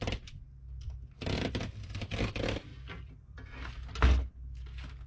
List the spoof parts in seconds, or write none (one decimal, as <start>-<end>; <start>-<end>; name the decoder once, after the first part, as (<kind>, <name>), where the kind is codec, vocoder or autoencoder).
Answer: 2.7-3.9 (vocoder, BigVGAN v2)